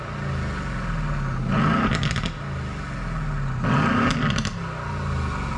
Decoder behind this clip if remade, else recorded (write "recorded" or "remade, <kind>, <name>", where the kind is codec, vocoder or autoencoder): recorded